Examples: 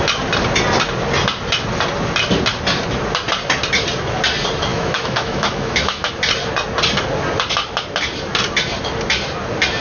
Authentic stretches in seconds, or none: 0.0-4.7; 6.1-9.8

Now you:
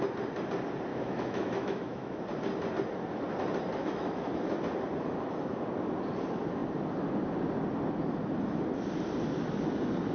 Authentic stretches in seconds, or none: 0.0-0.9; 2.2-3.8; 4.5-10.1

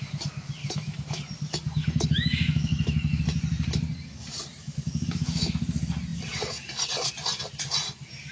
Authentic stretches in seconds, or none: 0.0-0.6; 1.2-1.8; 3.2-4.6; 5.5-8.3

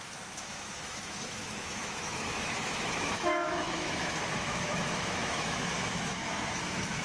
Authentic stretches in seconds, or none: none

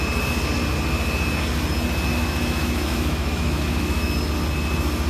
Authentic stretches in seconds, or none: 0.0-2.1; 4.1-5.1

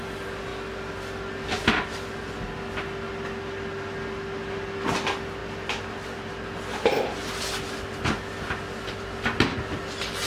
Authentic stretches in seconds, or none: 0.0-10.3

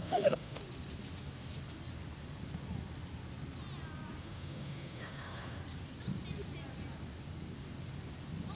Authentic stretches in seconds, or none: 0.6-4.2; 5.6-8.6